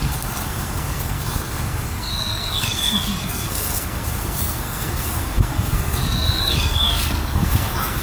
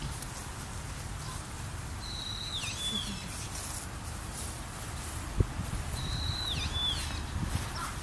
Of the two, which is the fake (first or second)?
first